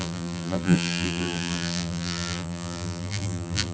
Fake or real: fake